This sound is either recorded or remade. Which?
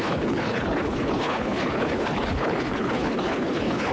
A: remade